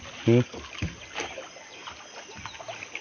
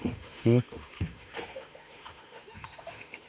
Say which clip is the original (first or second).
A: first